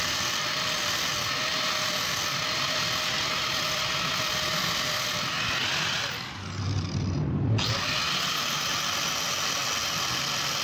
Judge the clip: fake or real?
real